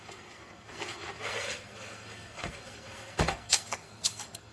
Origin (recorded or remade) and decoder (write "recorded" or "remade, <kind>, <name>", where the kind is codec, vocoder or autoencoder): remade, codec, SNAC